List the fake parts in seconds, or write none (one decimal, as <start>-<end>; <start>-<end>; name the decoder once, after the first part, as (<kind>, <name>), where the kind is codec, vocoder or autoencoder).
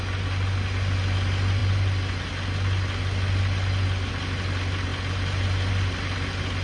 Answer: none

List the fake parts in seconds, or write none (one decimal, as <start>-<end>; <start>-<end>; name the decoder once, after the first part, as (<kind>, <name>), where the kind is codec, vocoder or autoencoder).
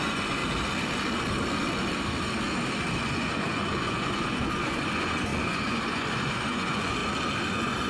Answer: 0.0-0.4 (vocoder, Vocos); 3.0-7.0; 7.5-7.9